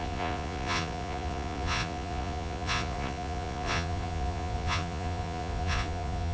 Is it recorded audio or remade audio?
remade